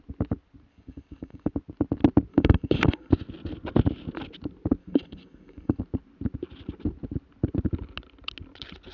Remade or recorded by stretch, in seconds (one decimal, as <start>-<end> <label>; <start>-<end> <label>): 0.0-0.7 recorded; 0.7-1.5 remade; 1.5-2.3 recorded; 2.3-3.1 remade; 3.1-4.8 recorded; 4.8-5.8 remade; 5.8-8.9 recorded